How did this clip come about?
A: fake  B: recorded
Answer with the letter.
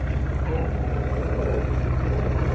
B